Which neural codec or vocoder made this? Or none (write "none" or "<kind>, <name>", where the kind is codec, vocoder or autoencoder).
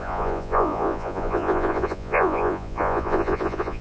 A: vocoder, Vocos